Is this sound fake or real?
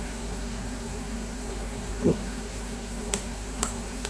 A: fake